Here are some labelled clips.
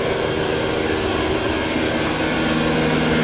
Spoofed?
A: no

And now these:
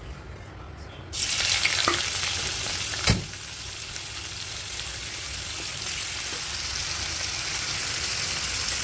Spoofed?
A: no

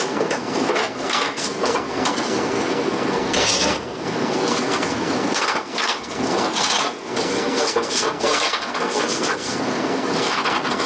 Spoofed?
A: yes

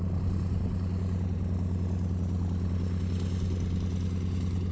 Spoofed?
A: no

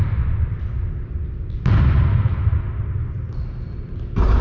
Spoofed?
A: no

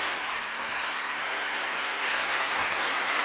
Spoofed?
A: yes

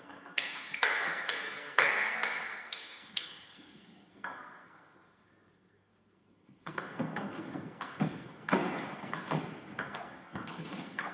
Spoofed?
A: yes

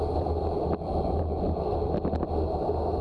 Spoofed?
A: no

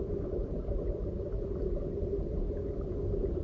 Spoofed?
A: no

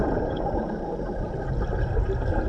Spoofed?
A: no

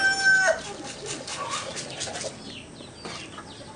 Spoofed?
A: no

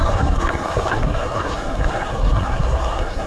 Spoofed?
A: yes